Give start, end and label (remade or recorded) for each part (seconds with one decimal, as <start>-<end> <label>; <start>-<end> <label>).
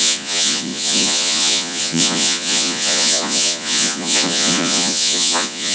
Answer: 0.0-5.7 remade